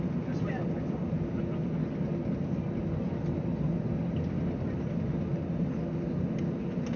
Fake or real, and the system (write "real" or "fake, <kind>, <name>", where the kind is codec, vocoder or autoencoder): real